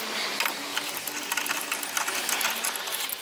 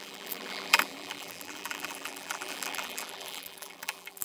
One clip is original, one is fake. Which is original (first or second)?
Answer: first